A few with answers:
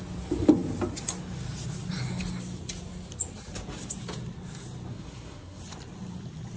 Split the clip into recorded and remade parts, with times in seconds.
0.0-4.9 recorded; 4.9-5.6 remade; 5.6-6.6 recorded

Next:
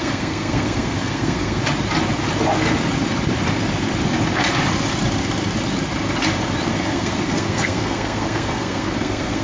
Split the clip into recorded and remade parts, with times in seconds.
0.0-1.6 remade; 1.6-6.7 recorded; 6.7-9.4 remade

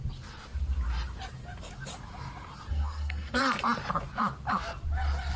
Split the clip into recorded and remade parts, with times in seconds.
0.0-2.7 recorded; 2.7-3.4 remade; 3.4-5.4 recorded

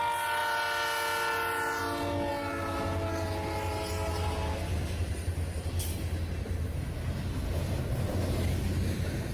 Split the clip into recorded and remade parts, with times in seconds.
0.0-9.3 recorded

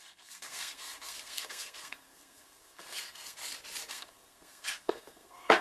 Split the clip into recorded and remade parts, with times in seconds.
0.0-3.4 remade; 3.4-3.9 recorded; 3.9-5.6 remade

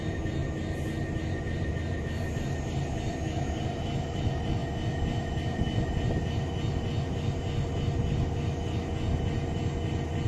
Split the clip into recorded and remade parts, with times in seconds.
0.0-10.3 recorded